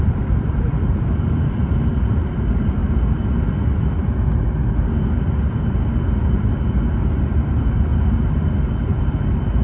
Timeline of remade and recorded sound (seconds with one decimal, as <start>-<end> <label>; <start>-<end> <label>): 0.0-2.8 remade; 2.8-7.5 recorded; 7.5-7.9 remade; 7.9-9.1 recorded; 9.1-9.6 remade